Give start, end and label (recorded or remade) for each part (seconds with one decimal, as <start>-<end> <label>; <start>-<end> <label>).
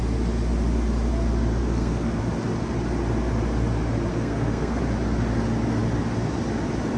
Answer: 0.0-1.6 recorded; 1.6-2.2 remade; 2.2-4.1 recorded; 4.1-4.8 remade; 4.8-7.0 recorded